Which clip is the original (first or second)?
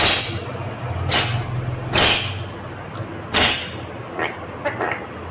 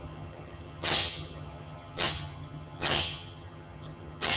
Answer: first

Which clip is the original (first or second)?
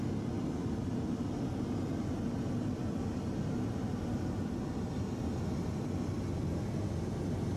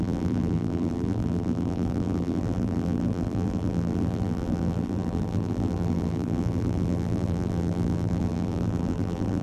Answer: first